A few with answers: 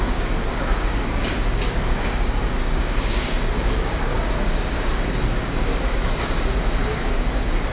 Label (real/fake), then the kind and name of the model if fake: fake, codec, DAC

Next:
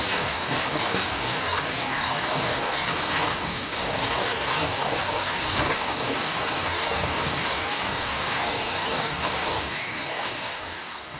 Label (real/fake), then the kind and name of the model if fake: fake, codec, DAC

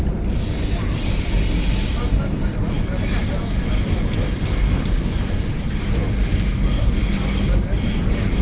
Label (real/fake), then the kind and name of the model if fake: real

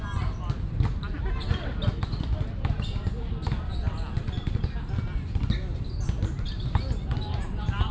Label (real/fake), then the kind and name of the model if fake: real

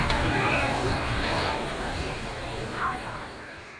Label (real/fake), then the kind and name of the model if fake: fake, codec, DAC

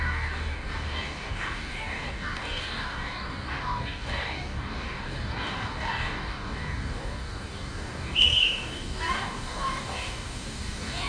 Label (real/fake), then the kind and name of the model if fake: fake, codec, DAC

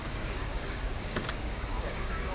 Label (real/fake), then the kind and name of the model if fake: fake, codec, DAC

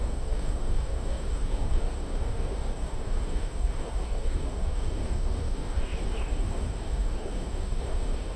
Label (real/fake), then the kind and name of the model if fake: fake, codec, DAC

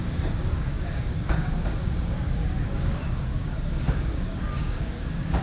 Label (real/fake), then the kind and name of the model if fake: fake, codec, DAC